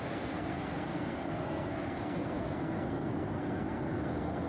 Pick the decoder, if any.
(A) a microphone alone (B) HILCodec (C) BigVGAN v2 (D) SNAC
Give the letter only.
D